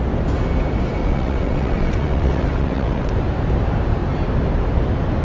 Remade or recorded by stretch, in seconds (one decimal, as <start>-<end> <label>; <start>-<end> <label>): 0.0-1.0 recorded; 1.0-3.1 remade; 3.1-5.2 recorded